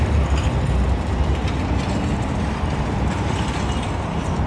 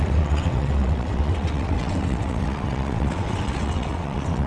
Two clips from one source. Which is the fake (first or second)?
second